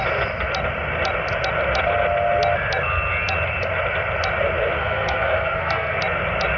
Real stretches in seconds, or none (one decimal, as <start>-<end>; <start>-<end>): 0.0-4.8; 6.0-6.6